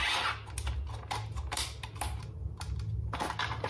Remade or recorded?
recorded